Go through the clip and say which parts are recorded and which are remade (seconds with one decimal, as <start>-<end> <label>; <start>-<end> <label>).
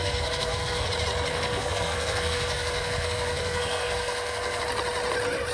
0.0-0.9 remade; 0.9-1.3 recorded; 1.3-4.6 remade; 4.6-5.5 recorded